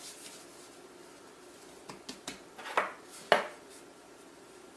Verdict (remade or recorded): recorded